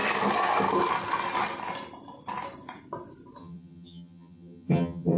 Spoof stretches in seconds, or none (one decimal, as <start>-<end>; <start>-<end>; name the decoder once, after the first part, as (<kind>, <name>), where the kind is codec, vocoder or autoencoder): 3.4-5.2 (vocoder, HiFi-GAN)